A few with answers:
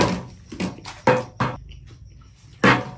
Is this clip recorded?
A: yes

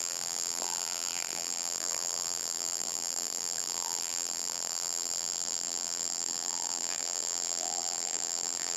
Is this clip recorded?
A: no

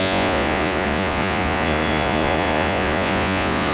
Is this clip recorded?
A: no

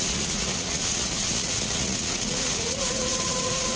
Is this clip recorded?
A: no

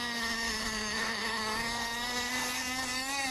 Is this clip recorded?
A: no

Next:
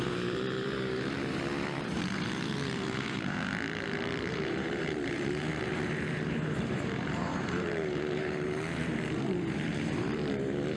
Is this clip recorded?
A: no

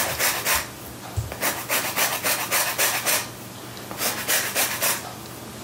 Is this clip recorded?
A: yes